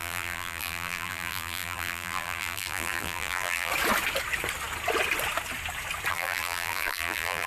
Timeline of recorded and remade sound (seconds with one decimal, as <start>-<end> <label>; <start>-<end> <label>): 0.0-3.7 remade; 3.7-6.1 recorded; 6.1-7.5 remade